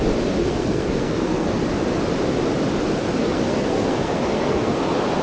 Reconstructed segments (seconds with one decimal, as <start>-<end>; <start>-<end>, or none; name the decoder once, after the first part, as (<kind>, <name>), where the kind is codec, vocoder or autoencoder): 0.4-1.5 (codec, SNAC); 3.2-4.8